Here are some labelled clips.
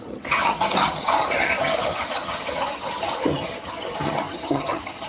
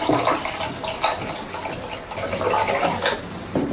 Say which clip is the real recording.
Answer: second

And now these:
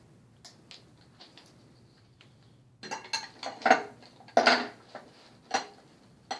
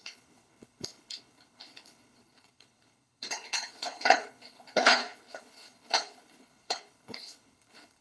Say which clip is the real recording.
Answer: first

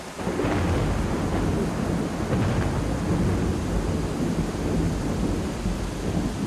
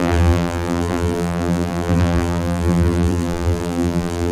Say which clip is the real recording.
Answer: first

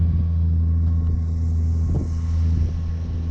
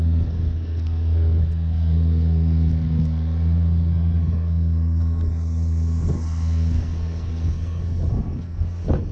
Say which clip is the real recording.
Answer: first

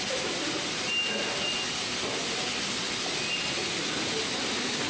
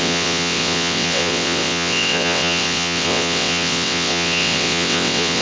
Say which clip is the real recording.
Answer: first